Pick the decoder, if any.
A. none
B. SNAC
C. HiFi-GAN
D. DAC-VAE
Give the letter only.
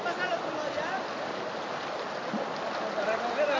A